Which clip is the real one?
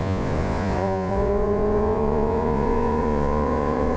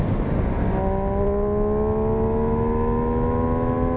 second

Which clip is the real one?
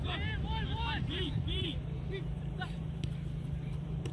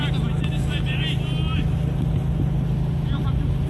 second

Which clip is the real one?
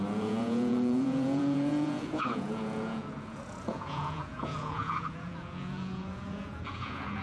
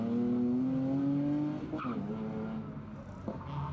second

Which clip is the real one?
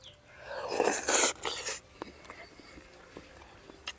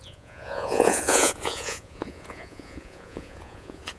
first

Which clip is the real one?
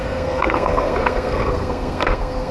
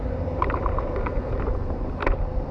second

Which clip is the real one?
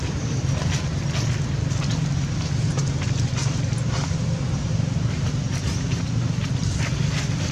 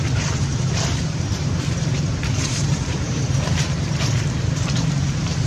first